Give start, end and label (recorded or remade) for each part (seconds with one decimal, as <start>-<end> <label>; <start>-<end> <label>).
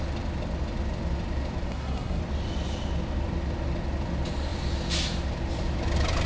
0.0-1.7 recorded; 1.7-2.2 remade; 2.2-6.3 recorded